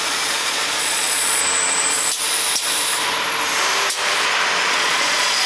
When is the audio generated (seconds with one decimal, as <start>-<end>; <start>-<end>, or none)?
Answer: 0.0-1.4; 4.7-5.5